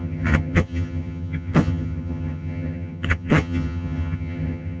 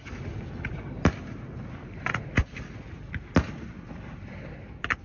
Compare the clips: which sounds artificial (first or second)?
first